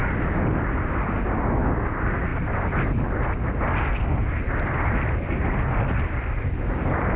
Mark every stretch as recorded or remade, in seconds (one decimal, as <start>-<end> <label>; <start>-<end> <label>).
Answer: 0.0-7.2 recorded